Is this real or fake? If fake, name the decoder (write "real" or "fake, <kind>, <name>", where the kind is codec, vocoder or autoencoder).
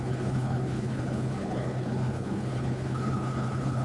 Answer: fake, codec, HILCodec